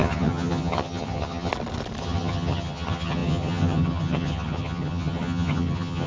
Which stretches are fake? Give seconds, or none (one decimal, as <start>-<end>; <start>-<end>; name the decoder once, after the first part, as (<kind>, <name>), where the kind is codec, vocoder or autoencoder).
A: 0.0-1.5 (vocoder, HiFi-GAN); 2.0-6.1